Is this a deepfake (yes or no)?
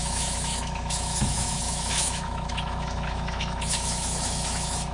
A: yes